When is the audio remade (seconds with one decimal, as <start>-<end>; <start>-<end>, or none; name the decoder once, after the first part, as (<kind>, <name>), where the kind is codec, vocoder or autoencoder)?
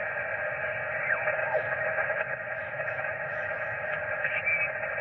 1.4-4.4 (autoencoder, DAC-VAE)